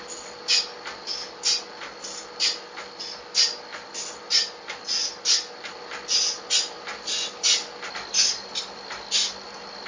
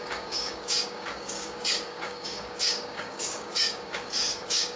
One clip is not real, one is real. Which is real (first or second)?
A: first